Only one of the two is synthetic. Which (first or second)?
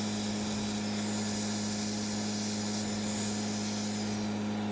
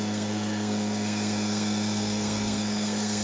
second